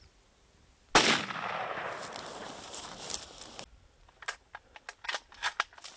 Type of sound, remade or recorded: recorded